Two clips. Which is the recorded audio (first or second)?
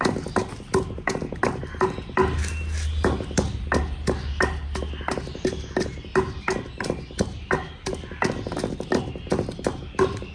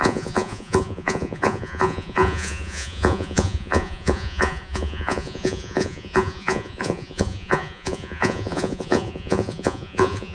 first